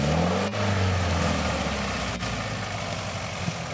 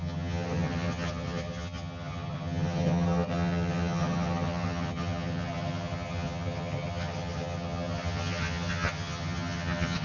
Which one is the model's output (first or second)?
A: second